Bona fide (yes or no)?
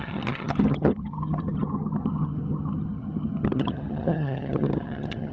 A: no